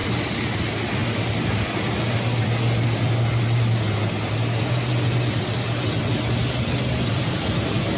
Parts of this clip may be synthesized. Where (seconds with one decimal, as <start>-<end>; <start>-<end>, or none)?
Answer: none